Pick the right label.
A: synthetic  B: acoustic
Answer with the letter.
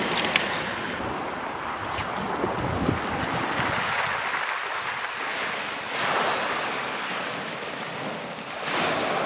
B